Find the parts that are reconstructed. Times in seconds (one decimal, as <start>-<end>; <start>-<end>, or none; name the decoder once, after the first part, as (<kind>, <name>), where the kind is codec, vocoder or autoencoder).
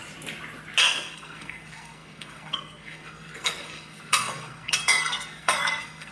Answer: 0.8-6.1 (codec, SNAC)